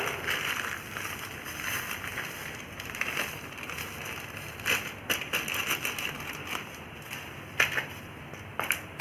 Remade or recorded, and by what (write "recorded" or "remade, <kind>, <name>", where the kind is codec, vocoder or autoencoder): recorded